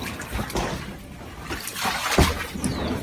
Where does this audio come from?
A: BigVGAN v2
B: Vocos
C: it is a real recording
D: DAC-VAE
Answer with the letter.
C